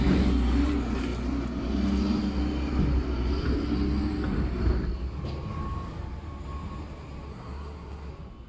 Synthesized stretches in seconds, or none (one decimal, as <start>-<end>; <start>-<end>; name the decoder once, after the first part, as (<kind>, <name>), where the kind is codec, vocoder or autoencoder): 7.3-8.1 (codec, SNAC)